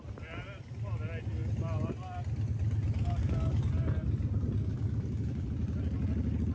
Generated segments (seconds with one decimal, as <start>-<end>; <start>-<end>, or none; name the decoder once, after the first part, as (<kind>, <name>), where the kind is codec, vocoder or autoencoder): 3.2-3.7 (codec, DAC); 4.7-5.5